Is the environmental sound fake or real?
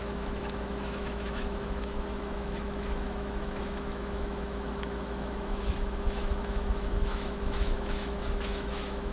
fake